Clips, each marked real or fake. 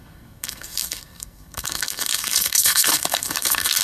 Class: fake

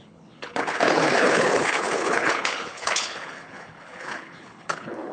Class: fake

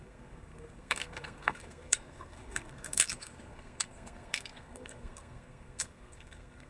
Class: fake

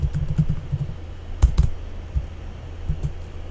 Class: real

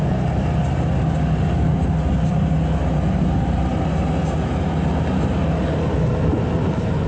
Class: real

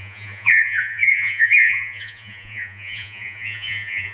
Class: fake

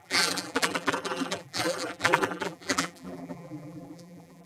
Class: fake